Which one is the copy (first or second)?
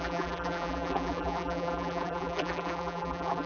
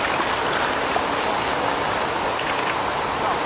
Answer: first